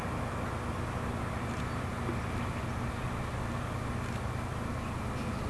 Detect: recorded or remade recorded